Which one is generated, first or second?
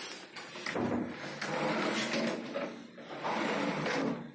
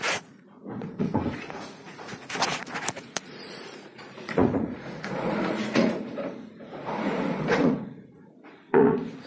second